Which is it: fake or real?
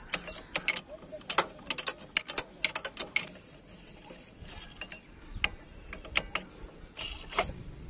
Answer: real